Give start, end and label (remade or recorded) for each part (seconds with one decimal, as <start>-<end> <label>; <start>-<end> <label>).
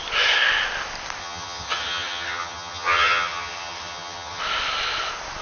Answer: 0.0-1.2 recorded; 1.2-4.4 remade; 4.4-5.4 recorded